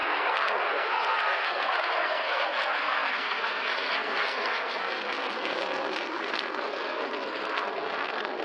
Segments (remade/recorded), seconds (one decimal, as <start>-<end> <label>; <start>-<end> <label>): 0.0-8.4 remade